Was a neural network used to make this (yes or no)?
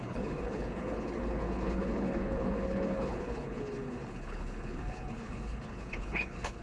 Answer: yes